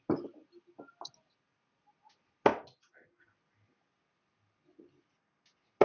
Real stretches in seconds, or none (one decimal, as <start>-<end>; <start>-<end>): 0.0-5.8